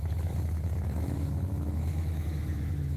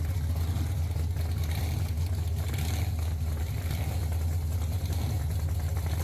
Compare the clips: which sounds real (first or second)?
second